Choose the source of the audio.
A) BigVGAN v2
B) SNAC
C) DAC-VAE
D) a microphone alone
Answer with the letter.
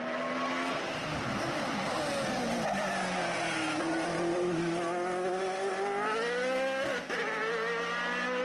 D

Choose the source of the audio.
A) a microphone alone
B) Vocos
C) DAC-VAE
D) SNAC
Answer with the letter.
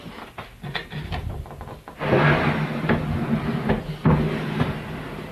A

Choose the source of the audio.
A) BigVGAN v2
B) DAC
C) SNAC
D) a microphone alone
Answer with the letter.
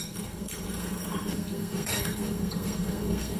C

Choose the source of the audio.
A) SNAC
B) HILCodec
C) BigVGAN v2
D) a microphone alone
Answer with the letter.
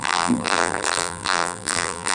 C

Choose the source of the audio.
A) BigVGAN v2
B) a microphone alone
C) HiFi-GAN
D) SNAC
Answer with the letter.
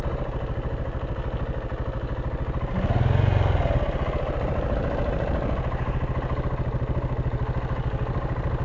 B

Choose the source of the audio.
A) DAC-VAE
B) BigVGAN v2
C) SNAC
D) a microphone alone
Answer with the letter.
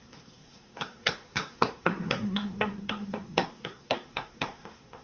C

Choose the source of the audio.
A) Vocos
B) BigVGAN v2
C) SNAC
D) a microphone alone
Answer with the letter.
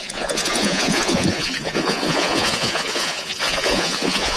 A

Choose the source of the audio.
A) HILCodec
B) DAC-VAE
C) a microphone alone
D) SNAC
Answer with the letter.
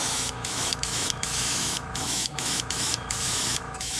B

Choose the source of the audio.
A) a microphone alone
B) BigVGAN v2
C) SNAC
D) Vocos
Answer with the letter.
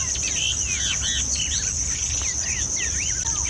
A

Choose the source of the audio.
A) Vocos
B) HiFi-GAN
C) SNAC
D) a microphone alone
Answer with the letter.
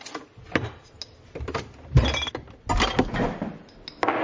D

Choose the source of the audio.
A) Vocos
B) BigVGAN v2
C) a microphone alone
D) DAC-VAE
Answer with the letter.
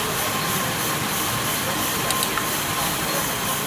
C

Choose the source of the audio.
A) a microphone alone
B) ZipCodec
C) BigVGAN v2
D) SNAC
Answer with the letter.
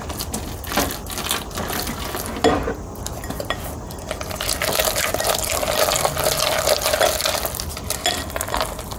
A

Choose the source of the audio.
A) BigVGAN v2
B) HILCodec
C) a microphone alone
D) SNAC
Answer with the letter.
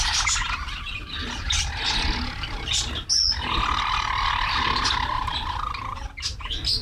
C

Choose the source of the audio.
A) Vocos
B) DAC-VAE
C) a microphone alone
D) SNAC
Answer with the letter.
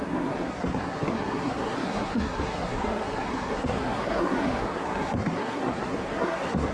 D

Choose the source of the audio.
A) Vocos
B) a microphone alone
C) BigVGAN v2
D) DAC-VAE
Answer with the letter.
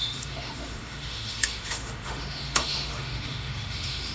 D